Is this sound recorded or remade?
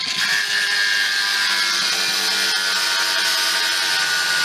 recorded